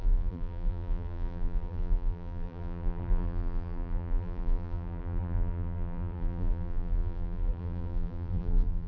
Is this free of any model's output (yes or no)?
no